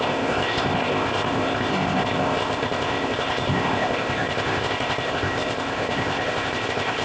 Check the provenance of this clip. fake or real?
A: fake